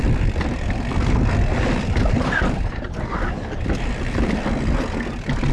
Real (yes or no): yes